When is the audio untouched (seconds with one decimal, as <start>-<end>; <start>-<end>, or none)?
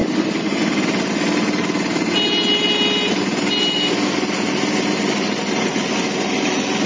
0.0-6.9